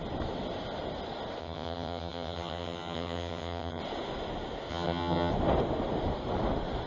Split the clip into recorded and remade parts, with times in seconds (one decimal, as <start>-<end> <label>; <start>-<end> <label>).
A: 0.0-1.4 recorded; 1.4-3.8 remade; 3.8-4.7 recorded; 4.7-5.3 remade; 5.3-6.9 recorded